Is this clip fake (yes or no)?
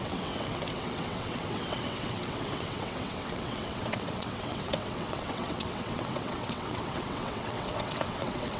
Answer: yes